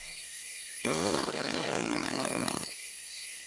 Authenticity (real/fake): fake